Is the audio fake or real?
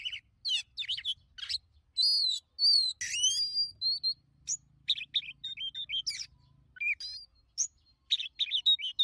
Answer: real